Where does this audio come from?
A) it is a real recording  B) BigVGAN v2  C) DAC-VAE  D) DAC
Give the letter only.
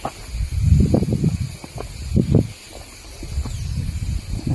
A